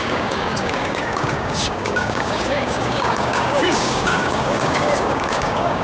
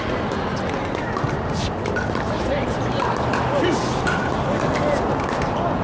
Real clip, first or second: second